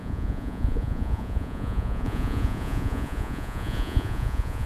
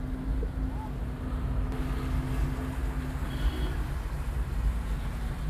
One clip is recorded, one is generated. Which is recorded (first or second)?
second